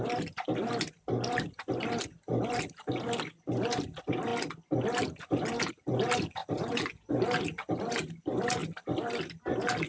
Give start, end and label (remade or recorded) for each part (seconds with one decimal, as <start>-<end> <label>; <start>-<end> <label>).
0.0-4.3 remade; 4.3-5.7 recorded; 5.7-8.6 remade; 8.6-9.3 recorded; 9.3-9.9 remade